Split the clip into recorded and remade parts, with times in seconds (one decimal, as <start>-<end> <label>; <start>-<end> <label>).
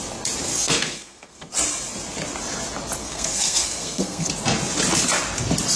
0.0-0.5 recorded; 0.5-1.5 remade; 1.5-3.0 recorded; 3.0-4.3 remade; 4.3-5.8 recorded